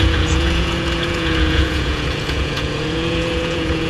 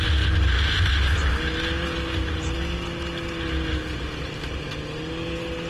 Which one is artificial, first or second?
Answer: first